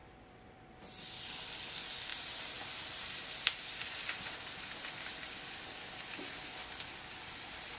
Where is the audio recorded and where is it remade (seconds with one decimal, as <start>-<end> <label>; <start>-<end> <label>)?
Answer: 0.0-0.6 remade; 0.6-2.1 recorded; 2.1-4.9 remade; 4.9-7.8 recorded